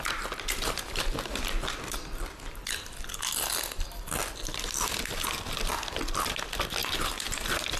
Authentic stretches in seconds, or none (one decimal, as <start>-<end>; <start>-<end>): 0.0-7.8